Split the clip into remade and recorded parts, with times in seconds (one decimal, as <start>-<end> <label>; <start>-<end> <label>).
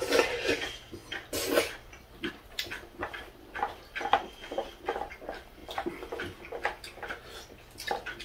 0.0-8.2 recorded